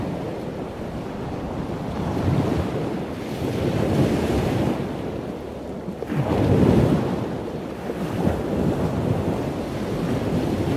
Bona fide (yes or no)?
yes